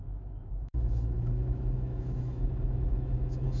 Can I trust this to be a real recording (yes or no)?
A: no